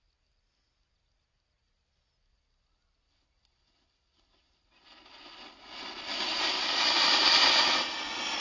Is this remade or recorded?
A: recorded